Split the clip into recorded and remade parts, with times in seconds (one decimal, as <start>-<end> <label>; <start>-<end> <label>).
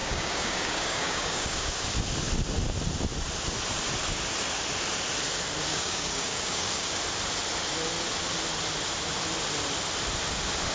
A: 0.0-1.7 remade; 1.7-5.7 recorded; 5.7-7.0 remade; 7.0-10.7 recorded